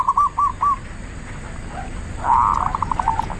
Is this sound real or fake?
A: real